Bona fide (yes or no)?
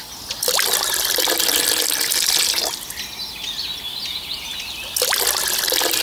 yes